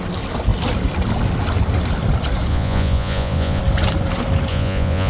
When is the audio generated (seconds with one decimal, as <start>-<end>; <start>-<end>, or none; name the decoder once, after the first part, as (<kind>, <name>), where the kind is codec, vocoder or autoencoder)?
2.5-3.6 (vocoder, Vocos); 4.5-5.1

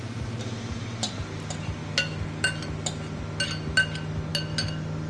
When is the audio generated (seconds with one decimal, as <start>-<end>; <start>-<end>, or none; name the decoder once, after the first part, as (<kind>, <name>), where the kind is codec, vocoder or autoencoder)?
none

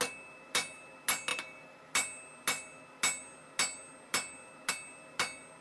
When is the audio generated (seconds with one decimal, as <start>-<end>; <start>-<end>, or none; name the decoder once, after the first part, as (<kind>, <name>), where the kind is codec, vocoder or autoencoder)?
none

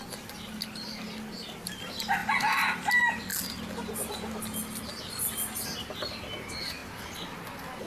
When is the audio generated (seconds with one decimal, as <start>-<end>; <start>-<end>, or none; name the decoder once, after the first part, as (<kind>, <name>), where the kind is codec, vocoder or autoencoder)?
2.2-2.9 (vocoder, BigVGAN v2)

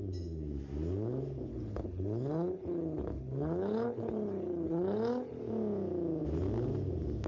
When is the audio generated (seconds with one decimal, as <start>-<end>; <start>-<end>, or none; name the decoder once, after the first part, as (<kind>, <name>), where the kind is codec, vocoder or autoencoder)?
1.5-5.4 (codec, HILCodec)